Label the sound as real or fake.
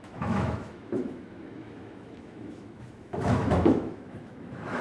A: fake